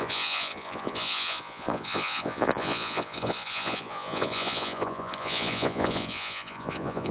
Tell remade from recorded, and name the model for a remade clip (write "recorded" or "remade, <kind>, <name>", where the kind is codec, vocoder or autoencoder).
remade, vocoder, Vocos